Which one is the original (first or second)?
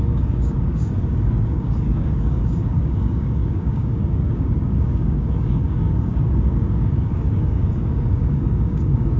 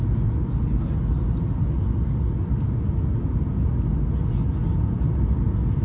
second